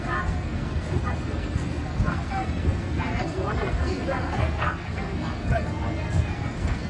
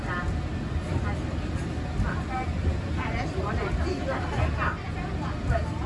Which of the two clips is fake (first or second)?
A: first